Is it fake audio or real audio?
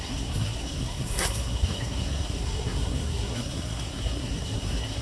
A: fake